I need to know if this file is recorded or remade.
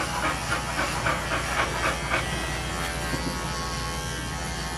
recorded